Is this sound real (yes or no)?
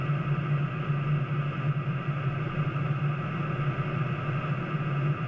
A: yes